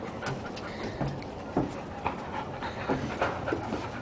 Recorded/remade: recorded